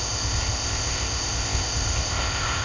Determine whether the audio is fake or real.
fake